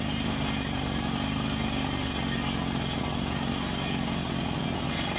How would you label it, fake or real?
real